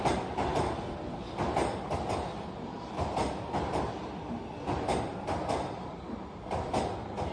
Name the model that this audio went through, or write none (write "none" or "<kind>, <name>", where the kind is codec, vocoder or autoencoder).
none